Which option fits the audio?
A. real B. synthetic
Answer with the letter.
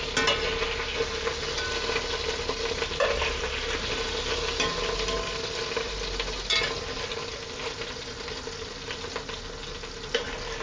A